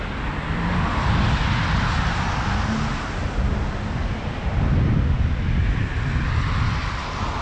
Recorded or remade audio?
recorded